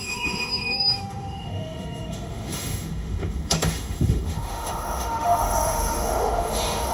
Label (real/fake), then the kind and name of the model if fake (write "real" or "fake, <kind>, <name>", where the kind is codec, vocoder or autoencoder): fake, autoencoder, DAC-VAE